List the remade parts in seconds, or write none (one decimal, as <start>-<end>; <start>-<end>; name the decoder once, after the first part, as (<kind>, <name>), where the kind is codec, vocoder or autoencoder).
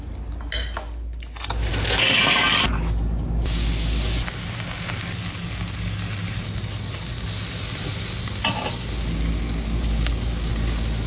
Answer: none